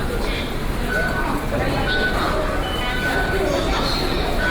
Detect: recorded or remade recorded